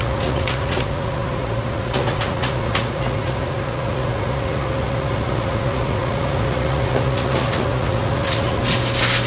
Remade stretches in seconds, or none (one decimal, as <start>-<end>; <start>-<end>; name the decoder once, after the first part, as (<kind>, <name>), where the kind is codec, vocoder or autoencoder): 0.0-8.6 (vocoder, Vocos)